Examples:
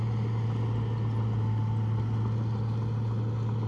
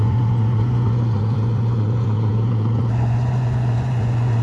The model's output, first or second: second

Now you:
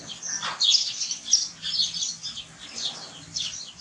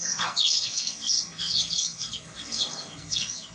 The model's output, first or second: second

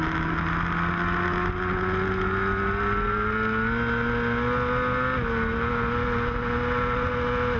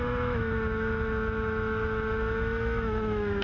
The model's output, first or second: second